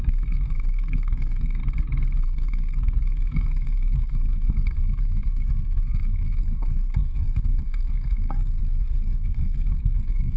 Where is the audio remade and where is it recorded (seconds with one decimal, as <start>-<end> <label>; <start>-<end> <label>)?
0.0-1.6 remade; 1.6-2.2 recorded; 2.2-10.4 remade

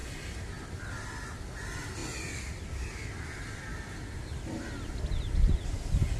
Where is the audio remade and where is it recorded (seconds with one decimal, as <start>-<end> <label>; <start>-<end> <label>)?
0.0-6.2 recorded

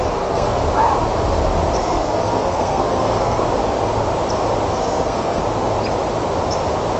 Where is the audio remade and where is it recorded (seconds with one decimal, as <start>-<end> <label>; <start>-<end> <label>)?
0.0-0.6 remade; 0.6-1.8 recorded; 1.8-3.4 remade; 3.4-4.7 recorded; 4.7-5.4 remade; 5.4-7.0 recorded

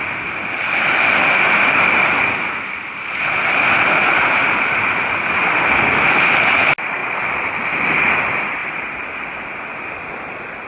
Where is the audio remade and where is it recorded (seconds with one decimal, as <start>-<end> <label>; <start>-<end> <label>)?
0.0-10.7 recorded

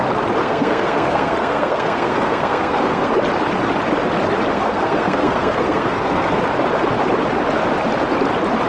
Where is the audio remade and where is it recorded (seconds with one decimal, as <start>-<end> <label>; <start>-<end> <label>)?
0.0-0.4 recorded; 0.4-3.1 remade; 3.1-4.5 recorded; 4.5-6.4 remade; 6.4-8.7 recorded

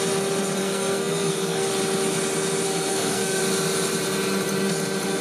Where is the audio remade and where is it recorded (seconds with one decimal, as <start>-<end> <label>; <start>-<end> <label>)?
0.0-0.6 recorded; 0.6-1.7 remade; 1.7-2.9 recorded; 2.9-3.4 remade; 3.4-5.2 recorded

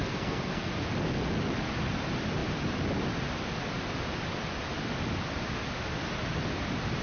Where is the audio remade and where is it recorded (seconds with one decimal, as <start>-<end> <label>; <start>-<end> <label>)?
0.0-0.7 remade; 0.7-7.0 recorded

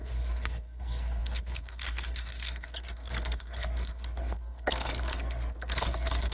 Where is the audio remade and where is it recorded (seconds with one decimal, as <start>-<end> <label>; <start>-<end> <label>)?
0.0-6.3 remade